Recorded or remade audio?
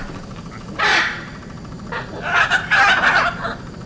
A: recorded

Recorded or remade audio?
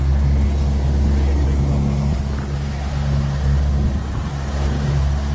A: recorded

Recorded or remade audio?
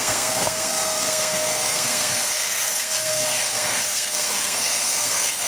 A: remade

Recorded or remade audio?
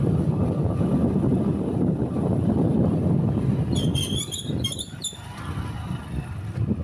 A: recorded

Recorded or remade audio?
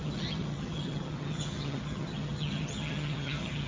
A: remade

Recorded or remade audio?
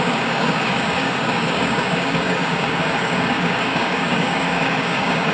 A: remade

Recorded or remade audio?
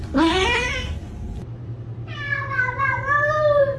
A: remade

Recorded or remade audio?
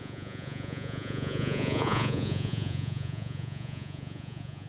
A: remade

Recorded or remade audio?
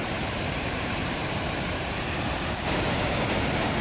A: remade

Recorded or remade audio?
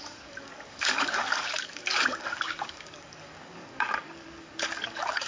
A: remade